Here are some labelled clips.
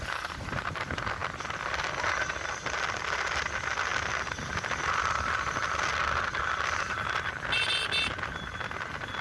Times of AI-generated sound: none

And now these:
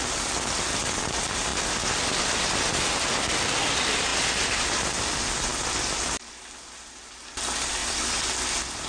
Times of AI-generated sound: 7.8-8.3 (vocoder, BigVGAN v2)

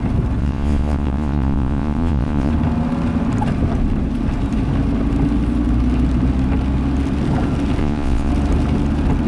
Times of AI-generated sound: 0.4-2.5 (vocoder, Vocos); 7.8-8.3

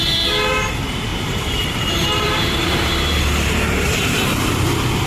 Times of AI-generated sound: 1.1-4.2 (vocoder, BigVGAN v2)

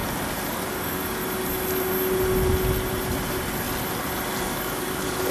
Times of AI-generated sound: 0.5-1.2 (codec, DAC); 4.4-5.3

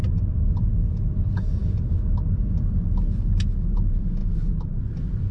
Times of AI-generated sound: none

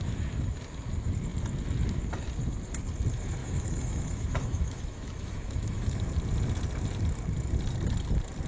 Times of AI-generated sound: 3.4-6.1 (autoencoder, DAC-VAE)

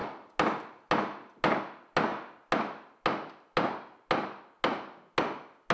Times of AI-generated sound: none